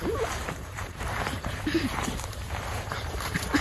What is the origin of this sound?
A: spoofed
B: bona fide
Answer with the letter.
A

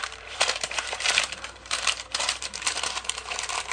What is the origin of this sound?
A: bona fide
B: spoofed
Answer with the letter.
B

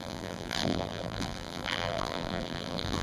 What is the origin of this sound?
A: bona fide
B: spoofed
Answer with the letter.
B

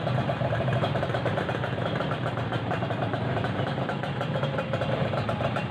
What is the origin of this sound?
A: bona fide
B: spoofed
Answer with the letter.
B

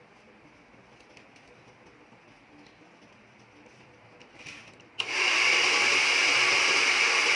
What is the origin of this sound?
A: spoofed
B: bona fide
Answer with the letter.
B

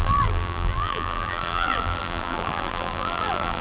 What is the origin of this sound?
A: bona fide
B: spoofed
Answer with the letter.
B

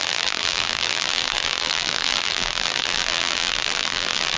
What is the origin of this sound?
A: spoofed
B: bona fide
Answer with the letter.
A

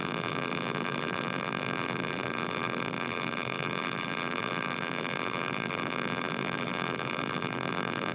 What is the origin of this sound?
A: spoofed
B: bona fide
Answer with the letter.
A